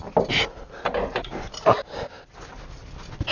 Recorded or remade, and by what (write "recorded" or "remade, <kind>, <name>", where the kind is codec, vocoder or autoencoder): recorded